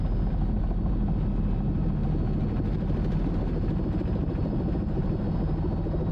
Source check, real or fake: real